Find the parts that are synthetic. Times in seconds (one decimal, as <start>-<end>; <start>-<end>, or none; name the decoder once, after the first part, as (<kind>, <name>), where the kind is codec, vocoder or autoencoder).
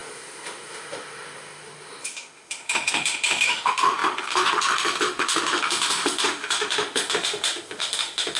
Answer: 0.0-8.4 (autoencoder, DAC-VAE)